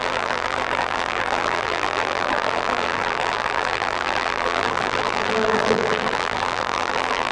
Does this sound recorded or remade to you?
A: remade